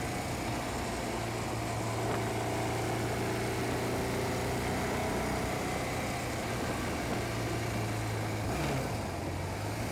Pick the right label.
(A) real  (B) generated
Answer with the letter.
A